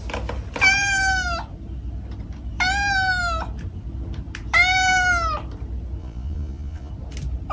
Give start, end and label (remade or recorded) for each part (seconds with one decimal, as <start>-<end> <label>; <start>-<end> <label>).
0.0-6.0 recorded; 6.0-6.9 remade; 6.9-7.5 recorded